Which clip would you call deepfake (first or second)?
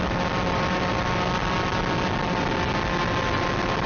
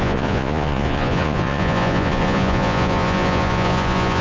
second